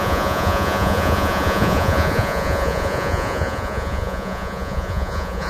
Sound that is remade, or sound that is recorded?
remade